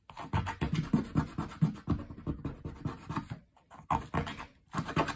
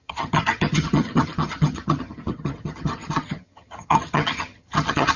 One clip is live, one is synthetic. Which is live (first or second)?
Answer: first